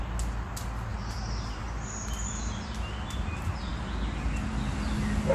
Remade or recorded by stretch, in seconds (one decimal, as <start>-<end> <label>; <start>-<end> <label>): 0.0-5.3 recorded